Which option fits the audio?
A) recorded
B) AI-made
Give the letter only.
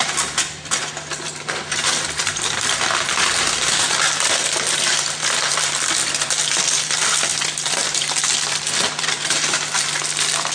B